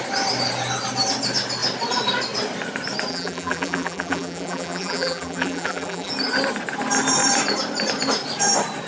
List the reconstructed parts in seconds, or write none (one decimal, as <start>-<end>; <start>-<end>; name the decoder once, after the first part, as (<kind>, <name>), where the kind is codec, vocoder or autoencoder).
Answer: 3.1-6.1 (vocoder, BigVGAN v2)